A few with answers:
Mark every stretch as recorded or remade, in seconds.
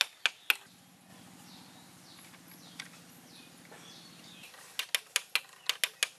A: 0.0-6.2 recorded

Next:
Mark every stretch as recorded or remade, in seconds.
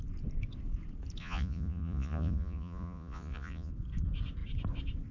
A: 0.0-1.2 recorded; 1.2-3.7 remade; 3.7-5.1 recorded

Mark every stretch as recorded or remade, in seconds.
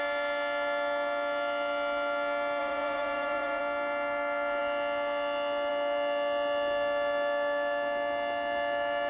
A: 0.0-2.6 recorded; 2.6-3.6 remade; 3.6-9.1 recorded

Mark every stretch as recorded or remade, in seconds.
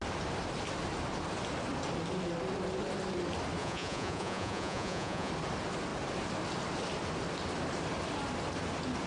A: 0.0-3.6 recorded; 3.6-5.3 remade; 5.3-9.1 recorded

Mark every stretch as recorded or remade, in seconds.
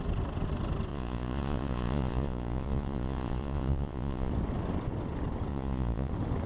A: 0.0-0.9 recorded; 0.9-4.3 remade; 4.3-5.5 recorded; 5.5-6.1 remade; 6.1-6.5 recorded